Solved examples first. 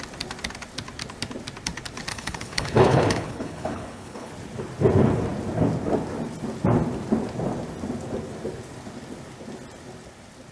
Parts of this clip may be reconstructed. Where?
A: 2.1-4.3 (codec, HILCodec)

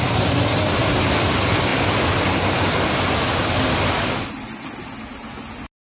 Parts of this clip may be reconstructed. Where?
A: none

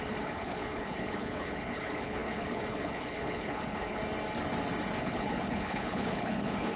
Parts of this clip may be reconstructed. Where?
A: 0.0-4.0 (codec, HILCodec); 5.0-6.8

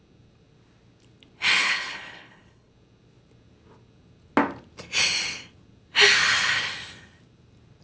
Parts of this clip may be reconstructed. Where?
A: 1.6-2.7 (codec, HILCodec)

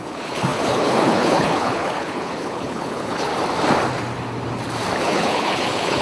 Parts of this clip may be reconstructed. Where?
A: 0.0-3.3 (codec, HILCodec); 5.0-6.0

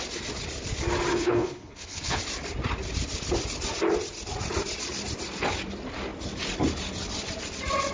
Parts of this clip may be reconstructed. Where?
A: 1.1-2.2 (codec, HILCodec)

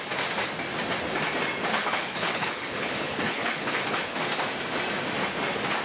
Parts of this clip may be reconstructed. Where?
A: 1.7-4.2 (codec, HILCodec)

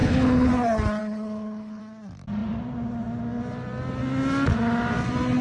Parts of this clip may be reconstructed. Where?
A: 0.0-0.5 (codec, HILCodec); 1.0-1.8